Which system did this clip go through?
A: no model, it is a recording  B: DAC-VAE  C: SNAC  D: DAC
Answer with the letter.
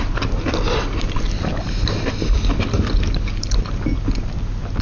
A